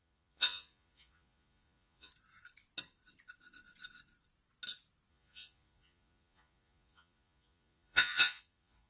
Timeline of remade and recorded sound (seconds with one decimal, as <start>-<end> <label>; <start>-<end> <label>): 0.0-2.1 remade; 2.1-5.1 recorded; 5.1-8.9 remade